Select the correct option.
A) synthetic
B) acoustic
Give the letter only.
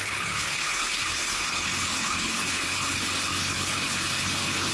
A